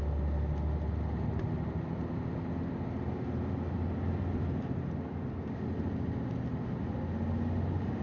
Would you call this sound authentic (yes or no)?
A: yes